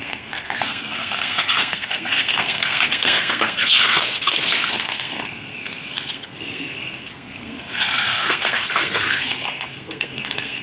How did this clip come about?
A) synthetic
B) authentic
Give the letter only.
A